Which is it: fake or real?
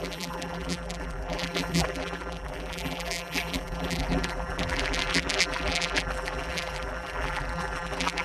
fake